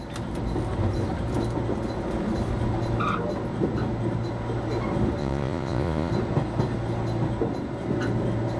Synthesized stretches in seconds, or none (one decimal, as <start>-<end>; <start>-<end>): 5.2-6.1